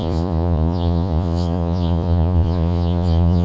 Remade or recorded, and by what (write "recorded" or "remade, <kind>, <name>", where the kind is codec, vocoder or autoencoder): remade, vocoder, Vocos